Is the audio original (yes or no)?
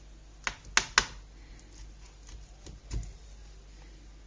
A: yes